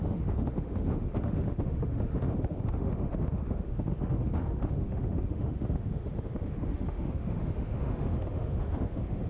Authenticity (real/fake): fake